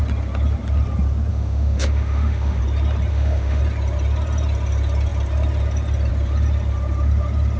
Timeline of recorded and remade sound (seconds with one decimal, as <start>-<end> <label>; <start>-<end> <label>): 0.0-1.3 recorded; 1.3-2.6 remade; 2.6-3.1 recorded; 3.1-3.6 remade; 3.6-7.6 recorded